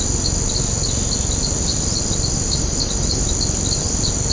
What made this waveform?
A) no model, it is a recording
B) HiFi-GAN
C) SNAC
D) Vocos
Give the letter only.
A